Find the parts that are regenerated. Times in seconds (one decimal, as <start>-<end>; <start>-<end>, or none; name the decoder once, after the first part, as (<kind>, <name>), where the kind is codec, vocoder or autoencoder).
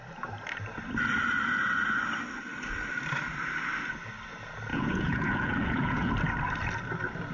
4.7-6.1 (vocoder, Vocos)